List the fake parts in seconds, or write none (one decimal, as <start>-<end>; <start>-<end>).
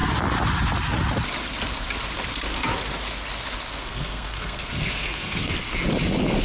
3.8-5.5